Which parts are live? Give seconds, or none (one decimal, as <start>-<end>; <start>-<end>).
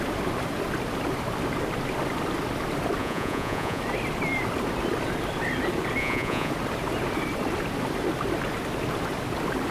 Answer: 0.0-3.0; 3.8-6.0; 6.5-9.7